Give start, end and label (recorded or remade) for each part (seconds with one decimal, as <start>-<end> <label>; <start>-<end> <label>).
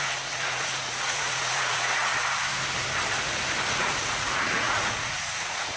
0.0-2.1 remade; 2.1-3.7 recorded; 3.7-5.8 remade